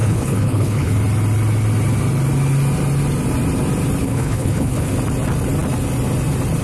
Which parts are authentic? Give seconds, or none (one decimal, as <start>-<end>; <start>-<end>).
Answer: 0.9-4.0; 4.9-6.6